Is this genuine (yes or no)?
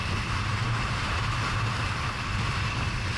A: yes